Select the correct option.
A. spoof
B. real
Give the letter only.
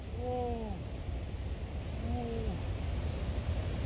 B